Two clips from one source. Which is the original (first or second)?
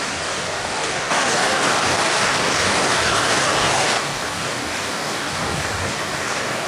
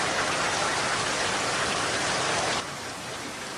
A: second